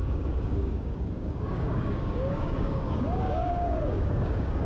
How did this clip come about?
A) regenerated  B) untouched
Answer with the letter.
A